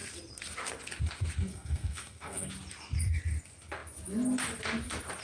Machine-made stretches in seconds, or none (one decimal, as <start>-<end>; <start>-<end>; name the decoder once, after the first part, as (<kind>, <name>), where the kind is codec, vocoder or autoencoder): 1.5-2.5 (codec, SNAC)